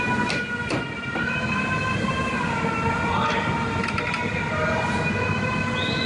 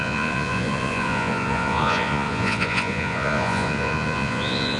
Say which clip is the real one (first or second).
first